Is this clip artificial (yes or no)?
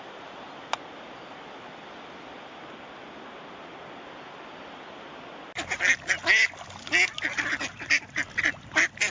no